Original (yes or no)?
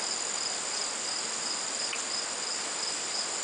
yes